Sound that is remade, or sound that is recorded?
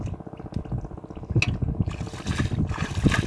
recorded